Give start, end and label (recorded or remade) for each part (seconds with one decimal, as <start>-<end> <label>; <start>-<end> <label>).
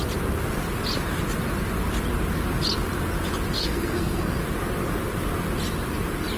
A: 0.0-3.5 recorded; 3.5-4.4 remade; 4.4-6.4 recorded